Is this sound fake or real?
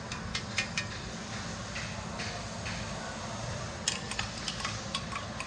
real